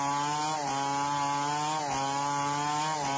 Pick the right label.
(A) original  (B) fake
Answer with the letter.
A